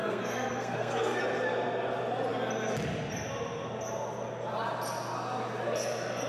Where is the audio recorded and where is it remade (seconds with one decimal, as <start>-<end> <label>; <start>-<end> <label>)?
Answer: 0.0-1.2 remade; 1.2-6.3 recorded